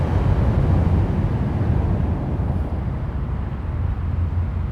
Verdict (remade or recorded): recorded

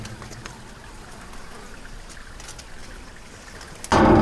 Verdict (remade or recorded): recorded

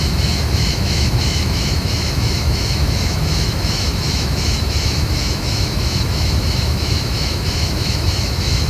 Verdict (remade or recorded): remade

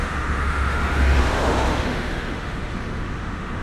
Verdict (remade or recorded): remade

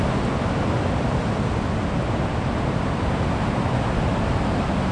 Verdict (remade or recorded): recorded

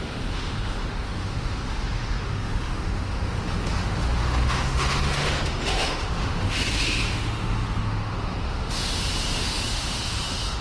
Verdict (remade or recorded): remade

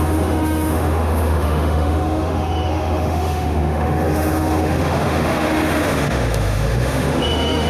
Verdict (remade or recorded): remade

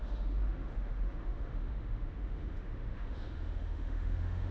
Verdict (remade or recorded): remade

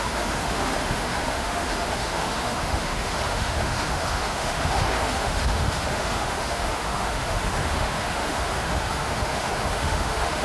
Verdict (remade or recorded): remade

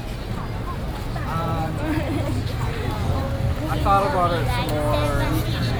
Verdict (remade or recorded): recorded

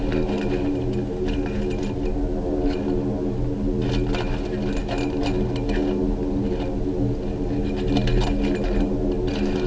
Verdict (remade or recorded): recorded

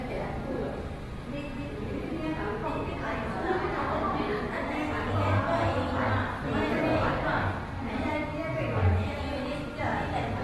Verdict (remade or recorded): recorded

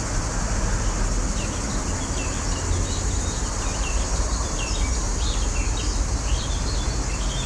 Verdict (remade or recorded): recorded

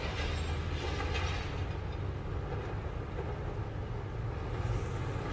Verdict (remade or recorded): recorded